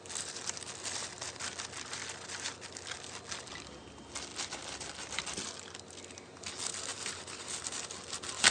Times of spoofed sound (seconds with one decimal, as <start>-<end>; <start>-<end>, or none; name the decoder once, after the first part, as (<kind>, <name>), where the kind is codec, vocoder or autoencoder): 4.3-5.2 (vocoder, BigVGAN v2); 6.9-8.1